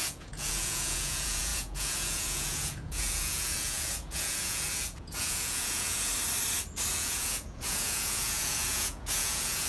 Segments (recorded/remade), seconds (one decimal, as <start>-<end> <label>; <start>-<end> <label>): 0.0-6.1 remade; 6.1-6.9 recorded; 6.9-9.7 remade